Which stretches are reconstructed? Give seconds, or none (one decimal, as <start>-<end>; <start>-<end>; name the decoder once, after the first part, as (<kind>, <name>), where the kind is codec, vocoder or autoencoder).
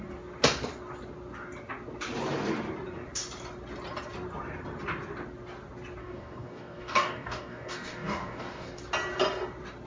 6.0-8.8 (codec, DAC)